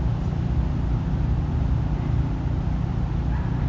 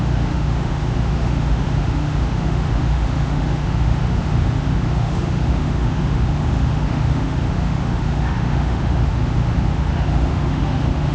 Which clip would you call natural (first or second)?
first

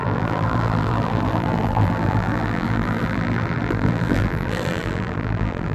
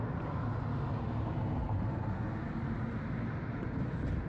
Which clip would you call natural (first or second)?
second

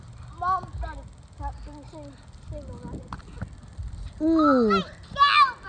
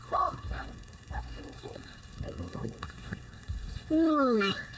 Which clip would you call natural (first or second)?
first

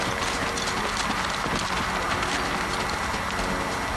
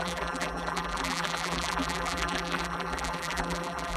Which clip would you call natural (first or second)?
first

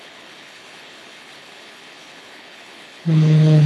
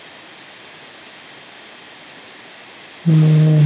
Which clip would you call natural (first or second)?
second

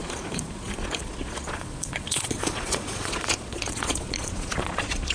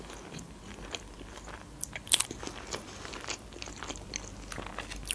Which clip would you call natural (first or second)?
second